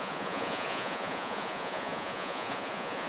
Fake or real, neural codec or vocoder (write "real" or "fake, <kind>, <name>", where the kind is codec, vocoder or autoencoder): fake, vocoder, Vocos